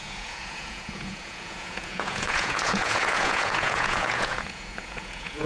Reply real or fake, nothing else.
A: fake